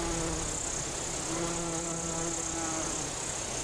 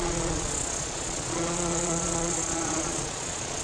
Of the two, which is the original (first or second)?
first